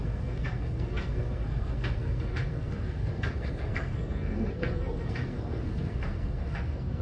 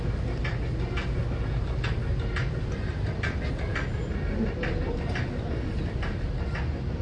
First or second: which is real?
second